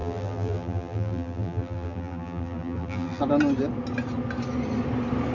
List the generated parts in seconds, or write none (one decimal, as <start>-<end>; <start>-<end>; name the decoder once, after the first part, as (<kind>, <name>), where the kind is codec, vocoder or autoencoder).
0.0-3.2 (vocoder, BigVGAN v2)